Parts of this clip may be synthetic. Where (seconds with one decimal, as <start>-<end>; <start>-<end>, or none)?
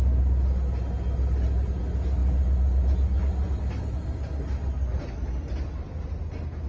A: none